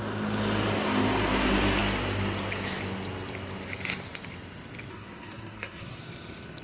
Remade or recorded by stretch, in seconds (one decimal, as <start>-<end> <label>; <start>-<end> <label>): 0.0-4.9 recorded; 4.9-6.0 remade; 6.0-6.6 recorded